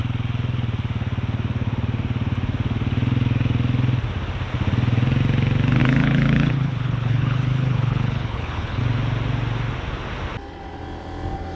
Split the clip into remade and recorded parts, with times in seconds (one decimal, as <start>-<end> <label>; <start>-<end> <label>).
0.0-5.8 recorded; 5.8-8.8 remade; 8.8-11.6 recorded